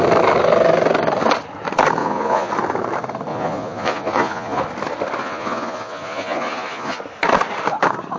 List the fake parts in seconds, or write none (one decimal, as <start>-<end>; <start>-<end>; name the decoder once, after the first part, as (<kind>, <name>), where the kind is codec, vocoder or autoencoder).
2.0-2.5 (vocoder, Vocos); 3.3-4.6; 5.2-7.0